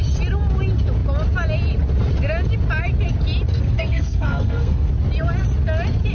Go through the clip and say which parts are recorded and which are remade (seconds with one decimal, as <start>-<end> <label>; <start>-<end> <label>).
0.0-3.5 recorded; 3.5-4.9 remade; 4.9-6.1 recorded